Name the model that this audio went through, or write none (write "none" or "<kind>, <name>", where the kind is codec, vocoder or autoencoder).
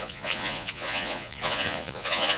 vocoder, Vocos